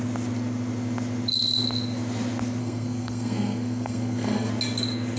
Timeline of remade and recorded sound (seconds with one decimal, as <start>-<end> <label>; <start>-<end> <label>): 0.0-2.6 recorded; 2.6-4.5 remade; 4.5-5.2 recorded